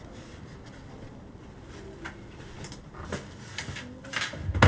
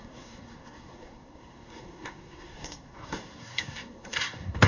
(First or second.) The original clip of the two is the first